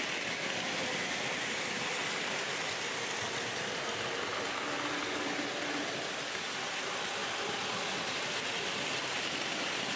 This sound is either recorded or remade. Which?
recorded